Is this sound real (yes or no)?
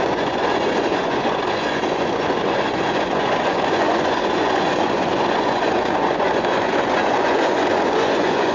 no